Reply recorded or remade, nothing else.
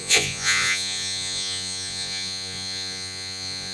remade